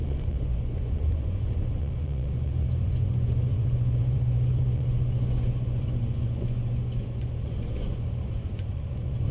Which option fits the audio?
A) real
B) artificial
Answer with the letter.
B